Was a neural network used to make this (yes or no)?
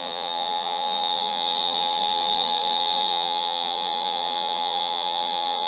yes